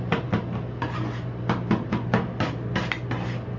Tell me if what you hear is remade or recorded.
recorded